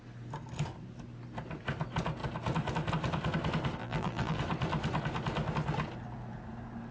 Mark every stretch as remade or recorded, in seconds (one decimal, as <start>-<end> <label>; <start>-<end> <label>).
0.0-3.8 recorded; 3.8-4.4 remade; 4.4-6.9 recorded